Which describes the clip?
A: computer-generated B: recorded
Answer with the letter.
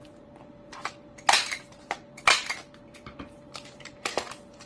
A